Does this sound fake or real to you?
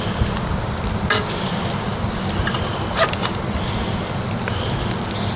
real